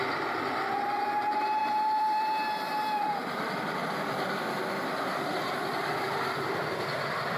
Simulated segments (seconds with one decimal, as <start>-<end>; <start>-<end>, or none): 1.6-3.1; 3.8-5.3